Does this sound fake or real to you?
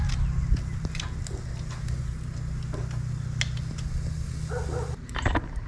real